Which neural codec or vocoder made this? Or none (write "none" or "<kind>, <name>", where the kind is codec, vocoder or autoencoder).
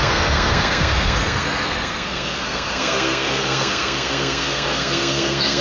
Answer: codec, SNAC